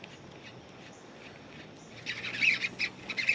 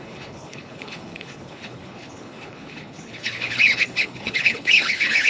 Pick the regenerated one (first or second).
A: second